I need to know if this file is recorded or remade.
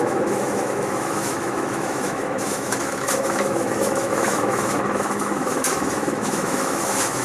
remade